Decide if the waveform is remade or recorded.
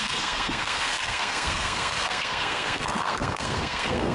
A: remade